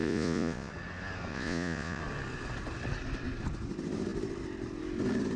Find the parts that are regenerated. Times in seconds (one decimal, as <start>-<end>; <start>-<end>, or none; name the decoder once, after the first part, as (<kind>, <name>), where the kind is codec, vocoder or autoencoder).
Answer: 0.0-0.7 (vocoder, Vocos); 1.3-2.0